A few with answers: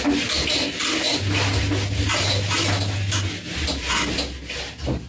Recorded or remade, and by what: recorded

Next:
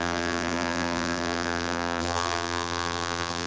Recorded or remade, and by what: remade, vocoder, BigVGAN v2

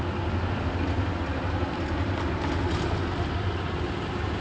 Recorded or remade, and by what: recorded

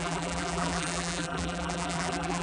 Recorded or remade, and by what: remade, vocoder, BigVGAN v2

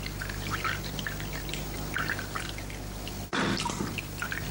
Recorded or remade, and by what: recorded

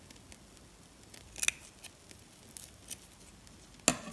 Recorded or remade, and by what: recorded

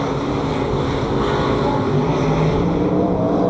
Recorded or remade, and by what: recorded